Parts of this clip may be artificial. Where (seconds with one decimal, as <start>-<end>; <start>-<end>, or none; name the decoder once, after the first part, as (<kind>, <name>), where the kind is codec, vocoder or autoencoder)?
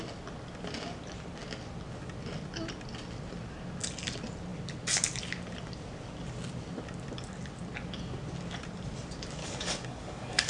9.4-10.5 (codec, DAC)